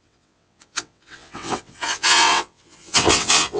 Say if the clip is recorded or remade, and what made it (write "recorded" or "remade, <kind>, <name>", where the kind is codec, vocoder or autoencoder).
remade, vocoder, WaveNeXt